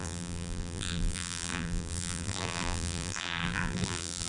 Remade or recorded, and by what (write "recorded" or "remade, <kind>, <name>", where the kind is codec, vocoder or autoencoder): remade, vocoder, BigVGAN v2